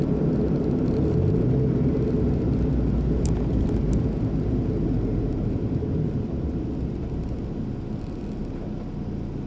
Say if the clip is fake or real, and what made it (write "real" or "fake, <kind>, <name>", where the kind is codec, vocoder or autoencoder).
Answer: real